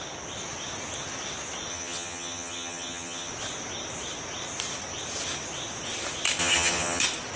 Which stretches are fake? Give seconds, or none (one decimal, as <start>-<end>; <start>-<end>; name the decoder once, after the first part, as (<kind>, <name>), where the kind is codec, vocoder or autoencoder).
1.7-3.3 (vocoder, HiFi-GAN); 6.4-7.0